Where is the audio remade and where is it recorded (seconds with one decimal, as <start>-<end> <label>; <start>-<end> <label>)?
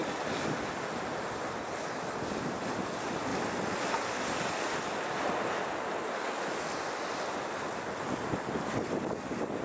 0.0-9.6 recorded